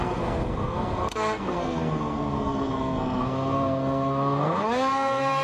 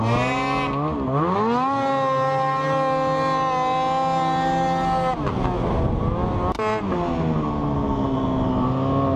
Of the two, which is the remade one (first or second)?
first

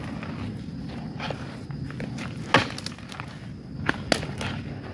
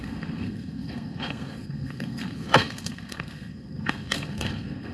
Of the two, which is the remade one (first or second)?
second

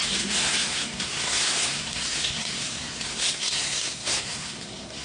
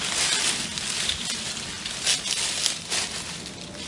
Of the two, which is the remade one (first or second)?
first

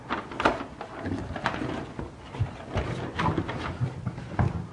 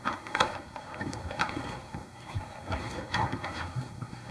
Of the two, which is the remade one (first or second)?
second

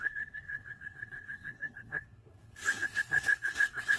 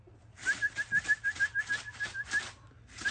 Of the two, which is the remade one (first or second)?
first